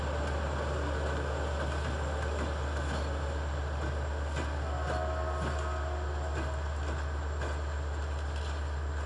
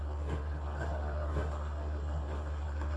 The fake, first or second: second